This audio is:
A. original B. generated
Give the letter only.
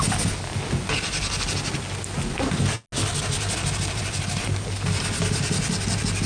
A